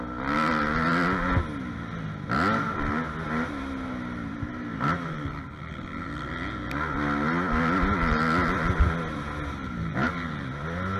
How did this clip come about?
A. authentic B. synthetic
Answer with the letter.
A